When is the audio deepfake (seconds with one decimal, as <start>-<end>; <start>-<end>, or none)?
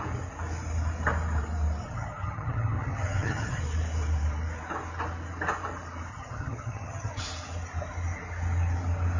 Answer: 1.8-3.6; 6.1-7.2